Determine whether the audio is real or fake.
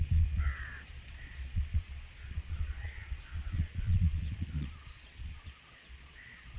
fake